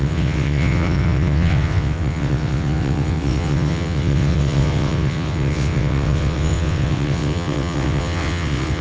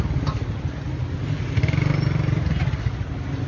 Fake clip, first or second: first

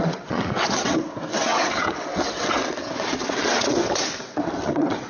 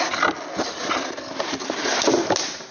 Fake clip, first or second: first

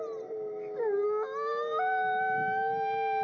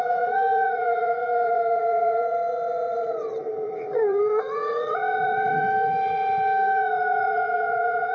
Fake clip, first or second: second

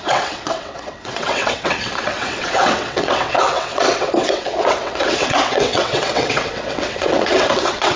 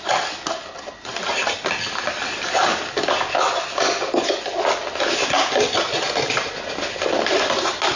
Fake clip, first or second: first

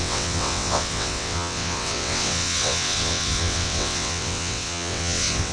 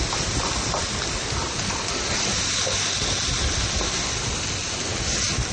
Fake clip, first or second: first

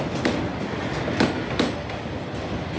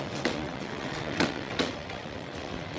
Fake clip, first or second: second